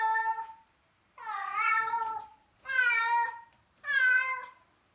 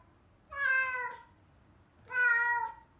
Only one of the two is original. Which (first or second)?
second